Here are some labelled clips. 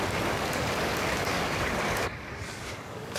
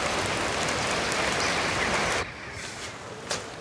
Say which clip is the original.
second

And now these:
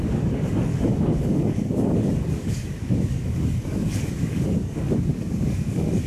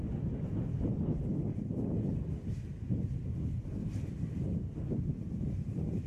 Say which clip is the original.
second